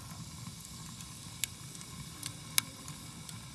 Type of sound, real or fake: real